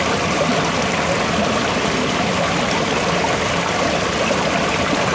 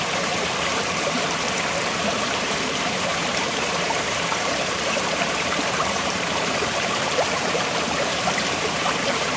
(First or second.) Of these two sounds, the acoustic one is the first